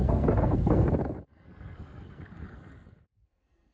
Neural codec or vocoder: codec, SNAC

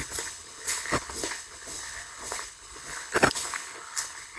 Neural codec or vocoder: codec, HILCodec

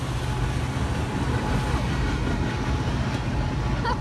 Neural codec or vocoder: none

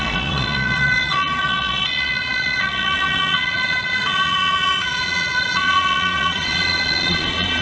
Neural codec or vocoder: vocoder, Vocos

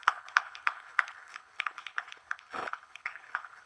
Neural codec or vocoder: codec, HILCodec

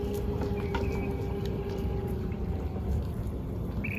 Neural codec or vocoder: none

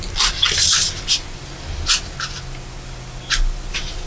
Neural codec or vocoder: none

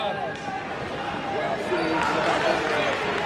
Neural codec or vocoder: none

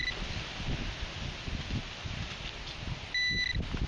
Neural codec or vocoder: none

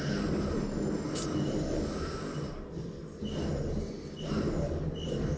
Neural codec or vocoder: none